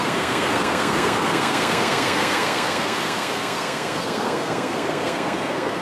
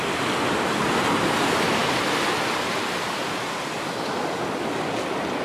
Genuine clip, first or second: second